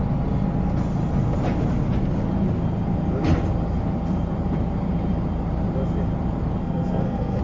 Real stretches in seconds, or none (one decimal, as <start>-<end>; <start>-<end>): 0.0-6.6